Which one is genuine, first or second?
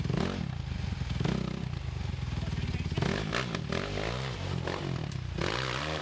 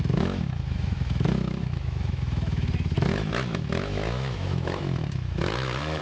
first